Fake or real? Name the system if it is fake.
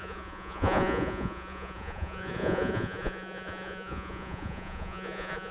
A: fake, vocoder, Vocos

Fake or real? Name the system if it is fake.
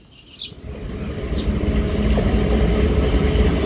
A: real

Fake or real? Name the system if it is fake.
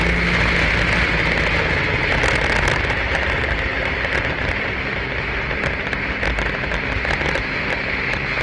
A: real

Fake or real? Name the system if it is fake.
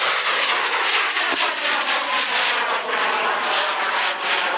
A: real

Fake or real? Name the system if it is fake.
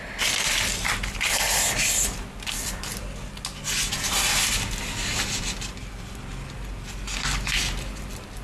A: real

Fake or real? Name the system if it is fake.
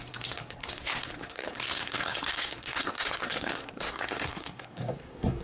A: fake, codec, SNAC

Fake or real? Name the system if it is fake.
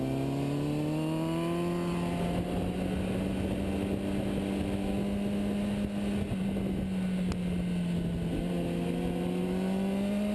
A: real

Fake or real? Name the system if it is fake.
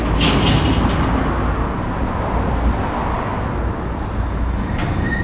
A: real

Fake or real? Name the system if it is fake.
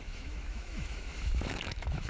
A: fake, autoencoder, DAC-VAE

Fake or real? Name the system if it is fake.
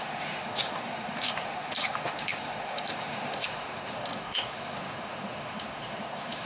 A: fake, autoencoder, DAC-VAE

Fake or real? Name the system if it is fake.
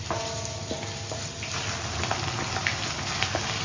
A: real